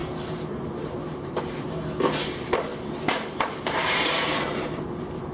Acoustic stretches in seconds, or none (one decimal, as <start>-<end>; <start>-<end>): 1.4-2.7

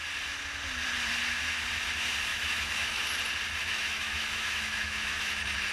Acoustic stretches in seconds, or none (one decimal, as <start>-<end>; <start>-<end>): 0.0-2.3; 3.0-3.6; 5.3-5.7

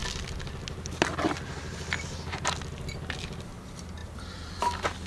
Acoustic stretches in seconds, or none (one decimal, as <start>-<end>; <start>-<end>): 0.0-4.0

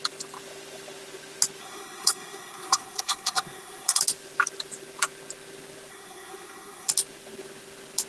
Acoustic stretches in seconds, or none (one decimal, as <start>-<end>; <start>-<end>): 0.0-1.6; 4.0-5.9; 6.9-8.1